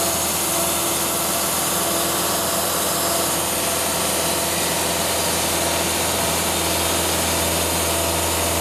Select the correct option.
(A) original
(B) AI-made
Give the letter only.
A